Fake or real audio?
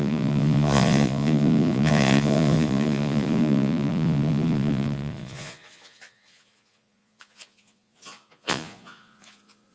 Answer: fake